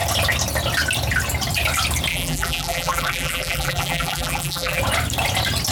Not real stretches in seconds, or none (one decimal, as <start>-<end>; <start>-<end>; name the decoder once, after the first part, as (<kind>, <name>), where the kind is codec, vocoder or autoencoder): 2.1-4.8 (vocoder, BigVGAN v2)